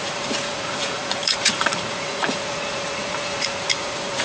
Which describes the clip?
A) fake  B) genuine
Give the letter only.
A